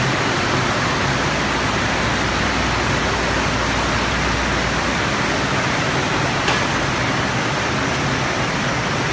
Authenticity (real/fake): real